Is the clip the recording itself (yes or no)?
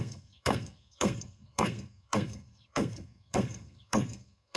no